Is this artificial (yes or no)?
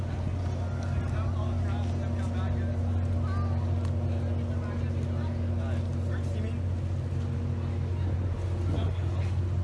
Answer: no